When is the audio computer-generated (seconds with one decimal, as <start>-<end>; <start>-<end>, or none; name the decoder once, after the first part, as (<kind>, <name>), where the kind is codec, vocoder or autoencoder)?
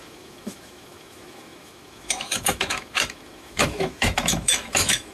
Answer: 0.0-5.1 (autoencoder, DAC-VAE)